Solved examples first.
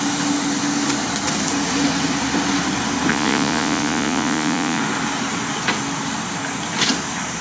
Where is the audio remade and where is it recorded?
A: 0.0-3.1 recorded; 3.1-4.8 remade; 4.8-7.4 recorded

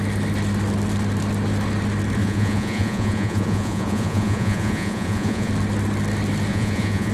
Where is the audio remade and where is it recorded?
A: 0.0-2.2 recorded; 2.2-5.5 remade; 5.5-6.5 recorded; 6.5-7.1 remade

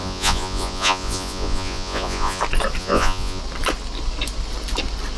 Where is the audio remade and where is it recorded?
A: 0.0-2.4 remade; 2.4-2.8 recorded; 2.8-3.4 remade; 3.4-5.2 recorded

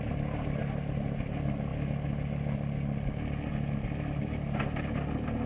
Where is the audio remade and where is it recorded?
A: 0.0-5.5 recorded

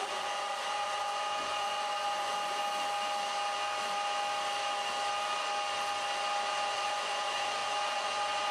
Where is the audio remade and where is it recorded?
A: 0.0-2.6 remade; 2.6-6.5 recorded; 6.5-8.5 remade

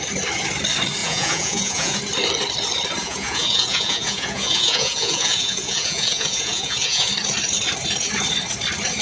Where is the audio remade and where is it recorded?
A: 0.0-1.0 recorded; 1.0-2.0 remade; 2.0-3.0 recorded; 3.0-7.1 remade; 7.1-9.0 recorded